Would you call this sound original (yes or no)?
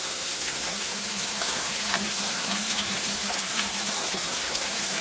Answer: no